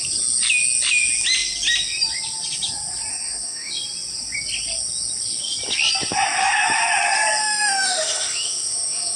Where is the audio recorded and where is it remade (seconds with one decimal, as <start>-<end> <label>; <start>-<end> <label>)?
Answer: 0.0-3.1 recorded; 3.1-3.7 remade; 3.7-7.4 recorded; 7.4-9.2 remade

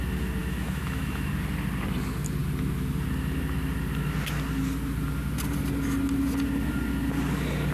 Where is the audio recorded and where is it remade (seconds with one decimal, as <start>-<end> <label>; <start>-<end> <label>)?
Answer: 0.0-0.4 recorded; 0.4-1.3 remade; 1.3-7.7 recorded

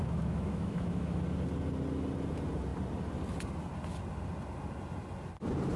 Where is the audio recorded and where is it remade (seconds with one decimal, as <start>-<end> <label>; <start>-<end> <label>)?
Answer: 0.0-1.2 remade; 1.2-5.8 recorded

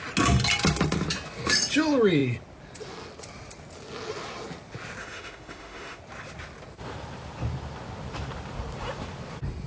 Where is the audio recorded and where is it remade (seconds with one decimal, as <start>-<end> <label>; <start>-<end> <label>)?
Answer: 0.0-5.0 recorded; 5.0-6.0 remade; 6.0-9.7 recorded

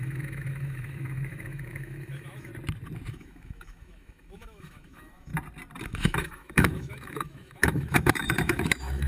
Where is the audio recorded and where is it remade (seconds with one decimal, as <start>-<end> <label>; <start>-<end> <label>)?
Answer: 0.0-2.5 remade; 2.5-3.1 recorded; 3.1-5.3 remade; 5.3-5.8 recorded; 5.8-9.1 remade

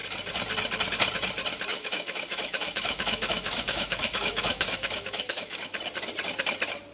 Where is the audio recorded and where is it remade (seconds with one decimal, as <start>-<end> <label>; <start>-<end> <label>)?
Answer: 0.0-1.7 recorded; 1.7-5.8 remade; 5.8-6.9 recorded

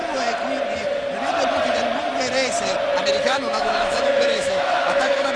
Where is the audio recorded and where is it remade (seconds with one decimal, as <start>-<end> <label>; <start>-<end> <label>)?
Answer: 0.0-3.2 recorded; 3.2-5.4 remade